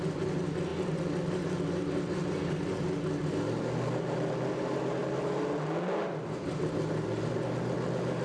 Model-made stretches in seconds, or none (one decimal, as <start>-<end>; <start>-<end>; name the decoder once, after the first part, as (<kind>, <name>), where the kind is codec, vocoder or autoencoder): none